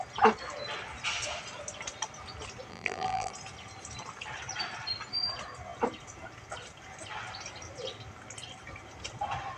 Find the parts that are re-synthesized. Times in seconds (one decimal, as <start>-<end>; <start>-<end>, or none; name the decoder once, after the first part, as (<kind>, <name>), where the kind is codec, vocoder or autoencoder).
2.7-3.3 (vocoder, BigVGAN v2)